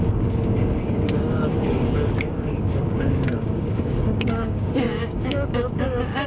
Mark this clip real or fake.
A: fake